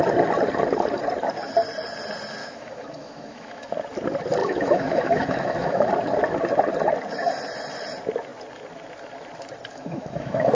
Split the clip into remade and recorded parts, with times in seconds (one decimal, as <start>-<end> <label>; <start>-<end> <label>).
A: 0.0-2.4 recorded; 2.4-3.7 remade; 3.7-4.4 recorded; 4.4-5.9 remade; 5.9-9.7 recorded; 9.7-10.5 remade